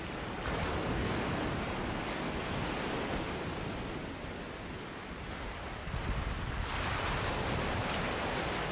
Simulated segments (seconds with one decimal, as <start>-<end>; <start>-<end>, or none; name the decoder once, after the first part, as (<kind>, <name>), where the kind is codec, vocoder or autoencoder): 1.0-2.0 (vocoder, BigVGAN v2)